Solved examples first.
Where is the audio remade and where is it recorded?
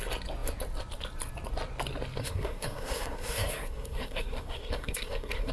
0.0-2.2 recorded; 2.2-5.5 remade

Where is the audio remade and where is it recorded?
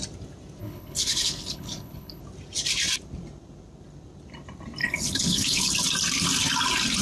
0.0-0.6 recorded; 0.6-2.2 remade; 2.2-4.8 recorded; 4.8-5.7 remade; 5.7-7.0 recorded